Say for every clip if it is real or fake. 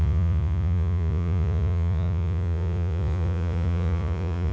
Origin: fake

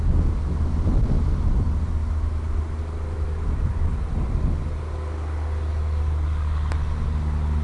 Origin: real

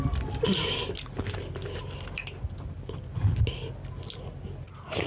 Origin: real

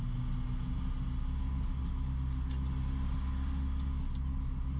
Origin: real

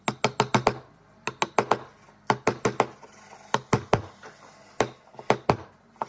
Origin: real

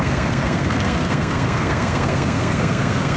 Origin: fake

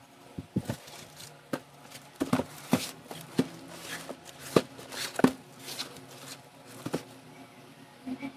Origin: fake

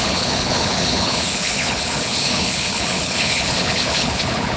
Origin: fake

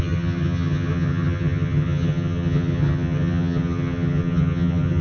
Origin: fake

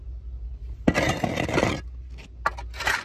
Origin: real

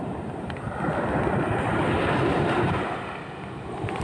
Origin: real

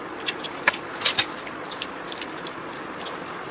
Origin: real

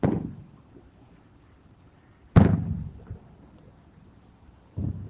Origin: fake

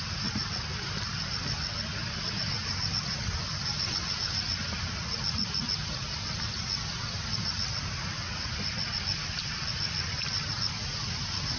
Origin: real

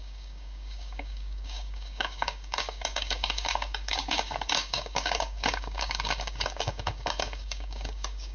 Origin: fake